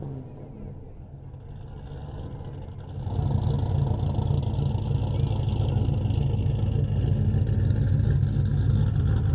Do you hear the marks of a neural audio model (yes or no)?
no